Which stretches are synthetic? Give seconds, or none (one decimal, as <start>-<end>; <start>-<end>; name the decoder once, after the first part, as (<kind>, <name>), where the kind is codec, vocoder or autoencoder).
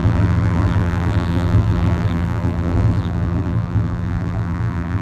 0.0-5.0 (vocoder, BigVGAN v2)